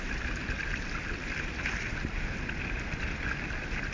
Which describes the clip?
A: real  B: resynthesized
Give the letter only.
A